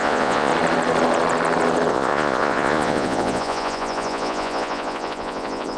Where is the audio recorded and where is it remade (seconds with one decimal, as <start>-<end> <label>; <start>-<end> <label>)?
0.0-0.5 remade; 0.5-1.9 recorded; 1.9-5.8 remade